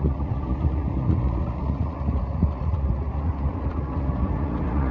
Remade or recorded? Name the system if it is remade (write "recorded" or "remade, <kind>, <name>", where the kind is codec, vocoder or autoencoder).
remade, vocoder, Vocos